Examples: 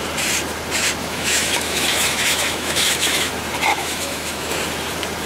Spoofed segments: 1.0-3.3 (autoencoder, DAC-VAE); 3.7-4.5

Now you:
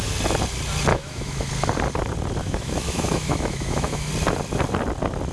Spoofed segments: 0.9-1.5 (autoencoder, DAC-VAE); 2.4-4.1

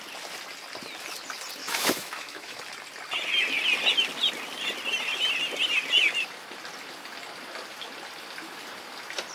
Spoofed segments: 1.6-2.6 (autoencoder, DAC-VAE)